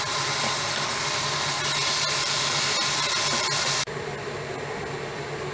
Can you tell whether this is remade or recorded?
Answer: remade